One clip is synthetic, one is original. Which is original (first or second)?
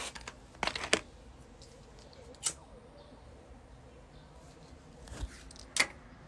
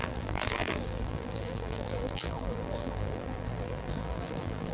first